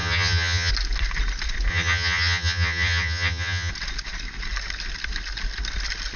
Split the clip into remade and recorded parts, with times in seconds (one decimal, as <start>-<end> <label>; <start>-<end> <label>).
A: 0.0-0.7 remade; 0.7-1.7 recorded; 1.7-3.7 remade; 3.7-6.2 recorded